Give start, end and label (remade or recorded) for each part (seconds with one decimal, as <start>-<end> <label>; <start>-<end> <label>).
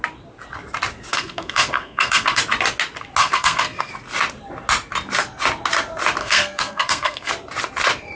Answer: 0.0-1.1 recorded; 1.1-2.4 remade; 2.4-3.2 recorded; 3.2-3.9 remade; 3.9-6.2 recorded; 6.2-7.3 remade; 7.3-8.2 recorded